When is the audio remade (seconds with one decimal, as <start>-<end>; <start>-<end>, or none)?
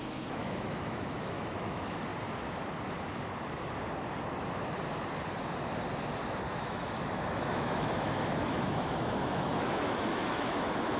0.0-2.1; 6.5-11.0